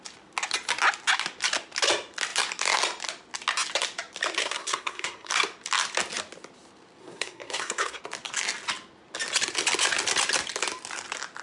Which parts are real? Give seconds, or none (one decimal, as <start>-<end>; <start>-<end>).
0.0-4.4; 5.3-7.0; 8.0-11.4